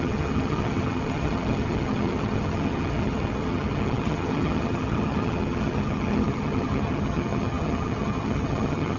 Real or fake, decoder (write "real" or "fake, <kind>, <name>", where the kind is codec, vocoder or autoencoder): fake, vocoder, HiFi-GAN